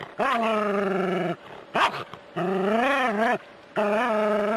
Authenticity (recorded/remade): recorded